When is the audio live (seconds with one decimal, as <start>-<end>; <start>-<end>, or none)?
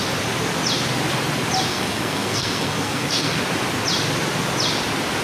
0.0-1.7; 3.4-5.2